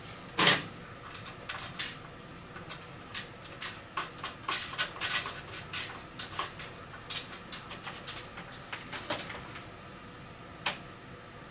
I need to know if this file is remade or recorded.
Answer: recorded